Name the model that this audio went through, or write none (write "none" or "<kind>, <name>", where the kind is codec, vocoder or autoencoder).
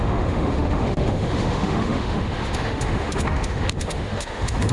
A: autoencoder, DAC-VAE